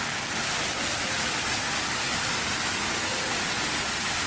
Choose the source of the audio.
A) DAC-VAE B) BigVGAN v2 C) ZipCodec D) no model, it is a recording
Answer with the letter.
D